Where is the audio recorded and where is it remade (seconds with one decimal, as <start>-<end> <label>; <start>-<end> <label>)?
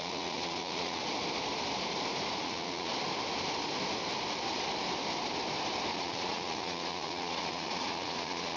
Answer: 0.0-1.0 remade; 1.0-2.4 recorded; 2.4-2.9 remade; 2.9-5.9 recorded; 5.9-8.6 remade